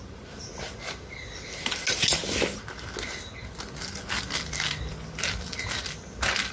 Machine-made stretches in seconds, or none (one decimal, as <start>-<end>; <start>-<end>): none